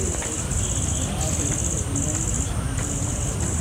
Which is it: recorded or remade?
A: recorded